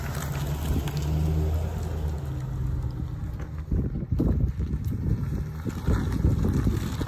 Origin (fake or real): real